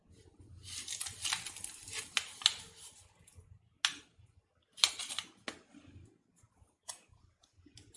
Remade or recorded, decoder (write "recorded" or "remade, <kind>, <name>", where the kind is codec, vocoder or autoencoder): recorded